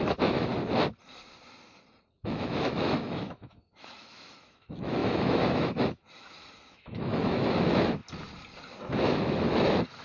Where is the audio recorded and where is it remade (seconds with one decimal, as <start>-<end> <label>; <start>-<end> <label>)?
0.0-0.5 remade; 0.5-2.1 recorded; 2.1-8.0 remade; 8.0-8.8 recorded; 8.8-10.0 remade